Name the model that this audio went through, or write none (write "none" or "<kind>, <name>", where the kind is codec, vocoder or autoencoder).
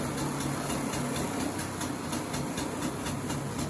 none